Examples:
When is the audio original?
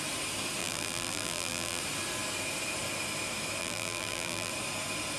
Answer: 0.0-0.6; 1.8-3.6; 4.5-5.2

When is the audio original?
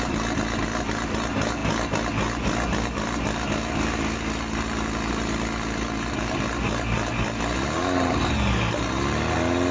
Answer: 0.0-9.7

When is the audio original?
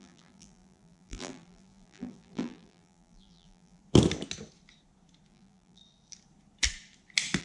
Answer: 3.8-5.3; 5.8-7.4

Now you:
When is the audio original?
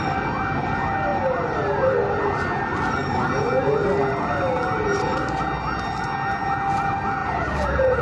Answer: 0.0-7.2